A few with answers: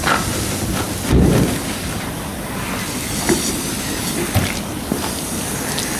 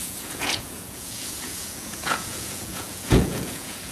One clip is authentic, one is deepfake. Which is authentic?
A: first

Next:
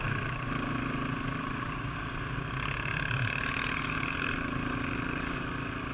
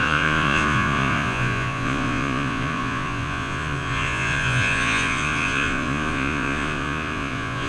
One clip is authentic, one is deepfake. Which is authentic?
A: first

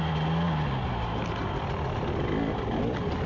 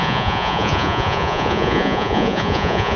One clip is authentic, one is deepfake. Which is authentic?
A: first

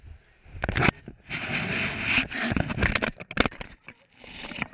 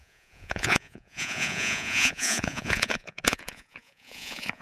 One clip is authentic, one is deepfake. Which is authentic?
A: first